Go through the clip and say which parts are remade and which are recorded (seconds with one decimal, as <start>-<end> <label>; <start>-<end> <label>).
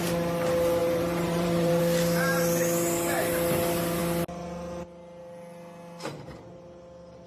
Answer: 0.0-0.8 recorded; 0.8-1.8 remade; 1.8-7.3 recorded